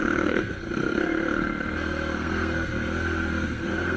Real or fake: fake